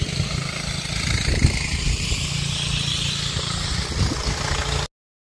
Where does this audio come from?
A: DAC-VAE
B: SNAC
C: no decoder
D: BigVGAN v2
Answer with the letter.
C